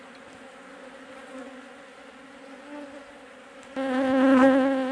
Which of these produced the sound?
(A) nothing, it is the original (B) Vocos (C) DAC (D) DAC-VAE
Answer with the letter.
A